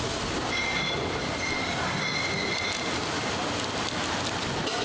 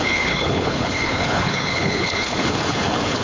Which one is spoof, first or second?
second